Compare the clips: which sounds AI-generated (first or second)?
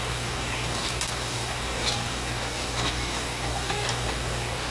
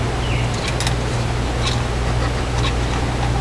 first